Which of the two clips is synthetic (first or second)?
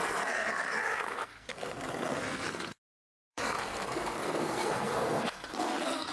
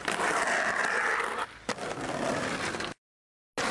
first